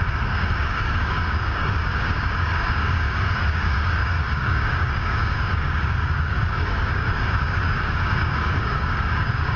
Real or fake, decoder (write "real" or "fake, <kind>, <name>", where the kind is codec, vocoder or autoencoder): fake, codec, DAC